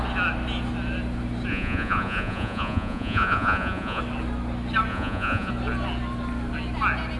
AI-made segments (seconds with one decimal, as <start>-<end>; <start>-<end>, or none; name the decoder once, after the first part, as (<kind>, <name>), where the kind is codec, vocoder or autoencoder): 1.5-4.0 (vocoder, Vocos); 4.9-5.5